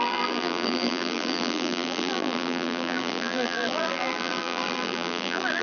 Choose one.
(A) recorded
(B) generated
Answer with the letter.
B